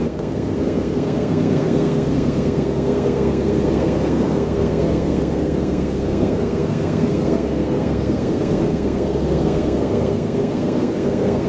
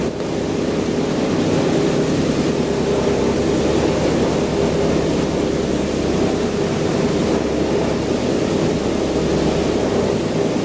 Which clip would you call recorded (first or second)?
second